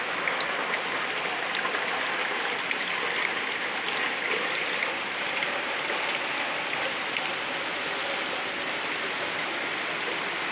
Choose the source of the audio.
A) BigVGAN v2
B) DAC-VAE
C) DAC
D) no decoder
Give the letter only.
D